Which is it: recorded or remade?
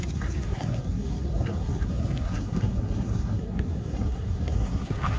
remade